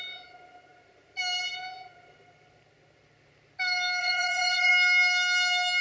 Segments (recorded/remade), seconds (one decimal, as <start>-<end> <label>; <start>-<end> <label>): 0.0-4.0 recorded; 4.0-4.7 remade; 4.7-5.8 recorded

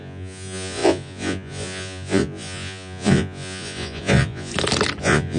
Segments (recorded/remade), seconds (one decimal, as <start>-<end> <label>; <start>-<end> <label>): 0.0-4.5 remade; 4.5-5.0 recorded; 5.0-5.4 remade

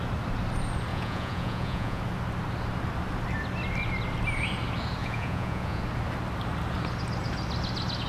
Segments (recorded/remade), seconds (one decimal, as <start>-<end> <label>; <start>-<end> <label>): 0.0-0.9 recorded; 0.9-2.0 remade; 2.0-5.0 recorded; 5.0-5.8 remade; 5.8-8.1 recorded

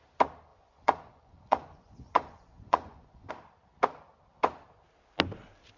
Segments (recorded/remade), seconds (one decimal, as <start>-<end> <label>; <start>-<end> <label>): 0.0-0.5 recorded; 0.5-3.3 remade; 3.3-5.8 recorded

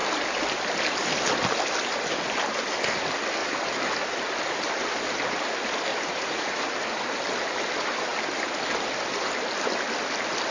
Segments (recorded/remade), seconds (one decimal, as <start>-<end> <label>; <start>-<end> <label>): 0.0-5.9 recorded; 5.9-6.6 remade; 6.6-10.5 recorded

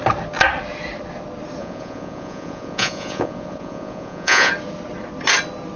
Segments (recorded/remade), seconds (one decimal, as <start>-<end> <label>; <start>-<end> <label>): 0.0-1.6 recorded; 1.6-4.5 remade; 4.5-5.8 recorded

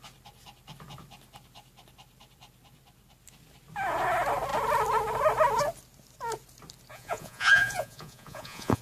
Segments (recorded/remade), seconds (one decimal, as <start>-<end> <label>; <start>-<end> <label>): 0.0-6.9 recorded; 6.9-8.8 remade

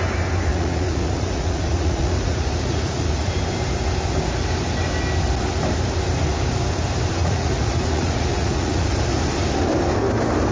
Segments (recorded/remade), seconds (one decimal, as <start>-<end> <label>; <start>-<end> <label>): 0.0-0.5 recorded; 0.5-3.3 remade; 3.3-7.2 recorded; 7.2-8.9 remade; 8.9-10.5 recorded